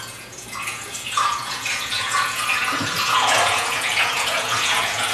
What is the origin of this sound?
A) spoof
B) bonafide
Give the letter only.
A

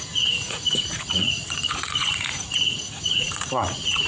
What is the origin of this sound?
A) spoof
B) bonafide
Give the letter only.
A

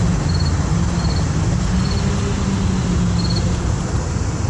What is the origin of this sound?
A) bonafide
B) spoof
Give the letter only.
A